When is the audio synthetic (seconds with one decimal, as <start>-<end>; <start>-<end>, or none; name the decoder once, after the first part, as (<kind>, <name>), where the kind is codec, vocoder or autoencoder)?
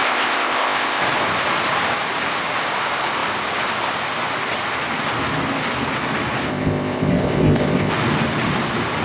0.0-1.0 (codec, ZipCodec); 6.5-7.9